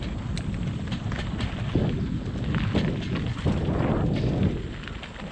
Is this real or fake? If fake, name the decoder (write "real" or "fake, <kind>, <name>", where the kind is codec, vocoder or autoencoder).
real